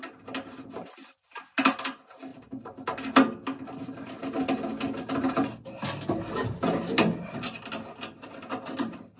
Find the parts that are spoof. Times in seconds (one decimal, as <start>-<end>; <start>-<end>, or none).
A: none